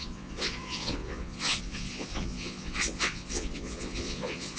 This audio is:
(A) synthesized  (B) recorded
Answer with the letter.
A